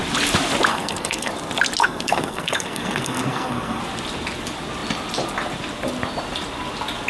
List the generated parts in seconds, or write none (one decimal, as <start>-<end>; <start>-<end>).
0.7-1.3; 1.8-3.8